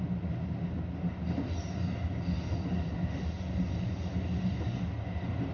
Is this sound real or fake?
real